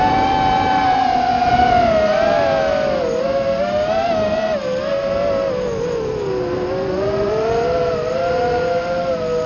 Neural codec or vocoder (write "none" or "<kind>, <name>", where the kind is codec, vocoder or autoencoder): none